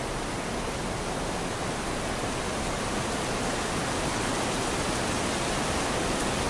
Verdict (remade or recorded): recorded